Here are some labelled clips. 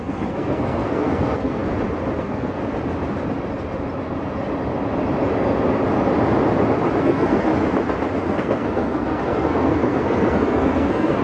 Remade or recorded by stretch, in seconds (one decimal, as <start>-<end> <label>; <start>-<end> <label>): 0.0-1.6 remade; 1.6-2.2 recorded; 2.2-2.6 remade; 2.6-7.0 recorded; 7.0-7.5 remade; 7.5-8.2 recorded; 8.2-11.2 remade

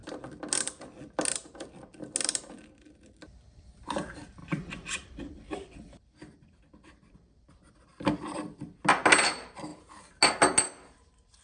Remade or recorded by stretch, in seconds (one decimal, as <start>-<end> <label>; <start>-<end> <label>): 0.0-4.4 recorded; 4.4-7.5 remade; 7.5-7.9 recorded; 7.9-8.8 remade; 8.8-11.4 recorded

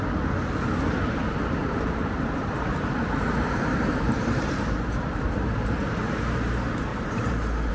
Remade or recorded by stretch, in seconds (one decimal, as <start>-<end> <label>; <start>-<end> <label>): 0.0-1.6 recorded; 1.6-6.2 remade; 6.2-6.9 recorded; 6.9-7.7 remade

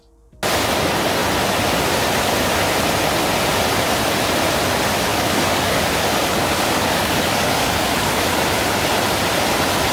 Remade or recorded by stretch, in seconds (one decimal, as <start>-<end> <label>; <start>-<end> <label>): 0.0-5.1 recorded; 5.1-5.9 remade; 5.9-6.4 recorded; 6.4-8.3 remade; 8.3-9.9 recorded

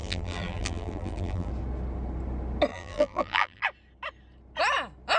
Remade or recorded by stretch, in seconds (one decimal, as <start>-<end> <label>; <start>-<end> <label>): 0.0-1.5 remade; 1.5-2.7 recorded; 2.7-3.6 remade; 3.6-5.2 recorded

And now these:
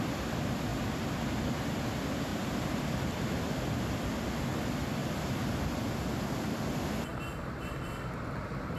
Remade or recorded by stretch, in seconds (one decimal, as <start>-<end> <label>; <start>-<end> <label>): 0.0-2.3 recorded; 2.3-3.4 remade; 3.4-5.0 recorded; 5.0-5.6 remade; 5.6-7.1 recorded; 7.1-7.7 remade; 7.7-8.8 recorded

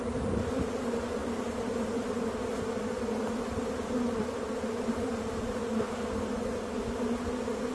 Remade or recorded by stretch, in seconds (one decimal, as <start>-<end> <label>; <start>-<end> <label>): 0.0-7.7 recorded

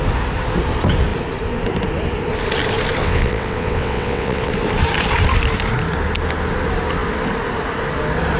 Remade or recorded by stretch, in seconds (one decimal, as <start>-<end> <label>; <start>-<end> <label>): 0.0-3.0 recorded; 3.0-4.5 remade; 4.5-8.4 recorded